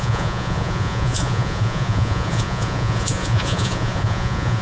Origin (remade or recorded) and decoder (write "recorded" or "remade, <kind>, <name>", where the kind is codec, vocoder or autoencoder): remade, vocoder, Vocos